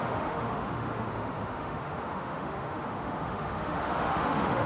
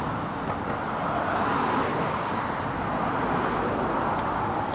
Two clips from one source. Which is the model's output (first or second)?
first